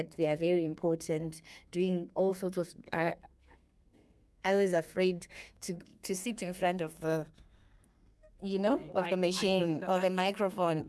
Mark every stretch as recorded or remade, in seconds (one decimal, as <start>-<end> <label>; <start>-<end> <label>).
0.0-10.9 remade